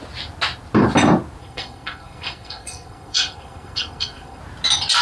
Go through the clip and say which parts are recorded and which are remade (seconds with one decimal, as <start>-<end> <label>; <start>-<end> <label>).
0.0-1.4 recorded; 1.4-4.4 remade; 4.4-5.0 recorded